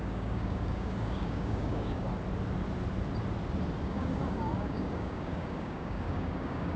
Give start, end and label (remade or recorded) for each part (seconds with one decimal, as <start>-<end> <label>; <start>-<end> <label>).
0.0-2.1 remade; 2.1-3.8 recorded; 3.8-6.8 remade